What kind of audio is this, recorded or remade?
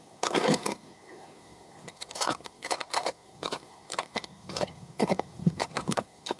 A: remade